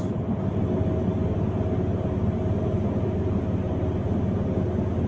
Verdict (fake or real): real